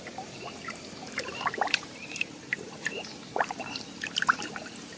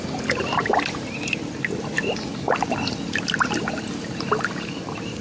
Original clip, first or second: second